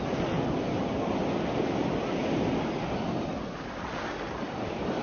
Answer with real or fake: real